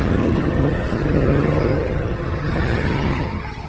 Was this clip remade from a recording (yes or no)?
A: yes